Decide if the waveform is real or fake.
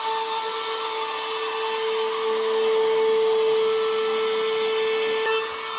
real